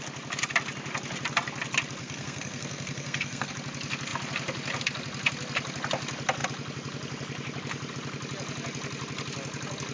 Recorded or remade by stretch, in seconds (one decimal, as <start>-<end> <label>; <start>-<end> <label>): 0.0-2.0 recorded; 2.0-3.5 remade; 3.5-9.9 recorded

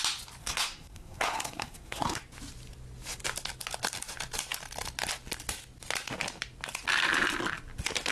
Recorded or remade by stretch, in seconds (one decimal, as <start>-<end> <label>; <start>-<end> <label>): 0.0-0.4 recorded; 0.4-2.2 remade; 2.2-8.1 recorded

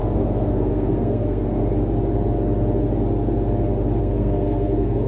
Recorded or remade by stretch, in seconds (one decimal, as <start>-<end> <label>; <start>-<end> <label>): 0.0-1.6 remade; 1.6-4.0 recorded; 4.0-5.1 remade

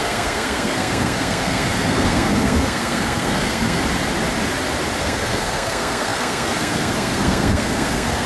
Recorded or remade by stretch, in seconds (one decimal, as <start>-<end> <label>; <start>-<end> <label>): 0.0-3.8 remade; 3.8-5.0 recorded; 5.0-8.3 remade

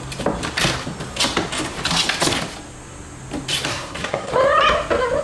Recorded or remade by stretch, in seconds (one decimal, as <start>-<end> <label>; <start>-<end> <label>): 0.0-3.7 recorded; 3.7-4.3 remade; 4.3-5.2 recorded